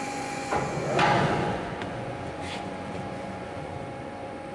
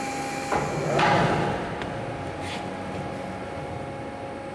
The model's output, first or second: first